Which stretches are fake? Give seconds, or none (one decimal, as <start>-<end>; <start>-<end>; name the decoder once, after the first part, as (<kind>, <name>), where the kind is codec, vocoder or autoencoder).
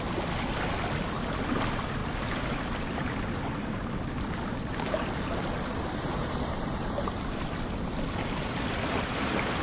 none